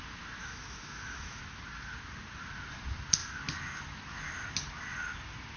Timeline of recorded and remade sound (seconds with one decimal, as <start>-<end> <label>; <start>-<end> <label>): 0.0-0.4 recorded; 0.4-1.4 remade; 1.4-5.6 recorded